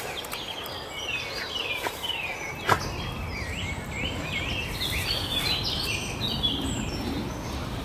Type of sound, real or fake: real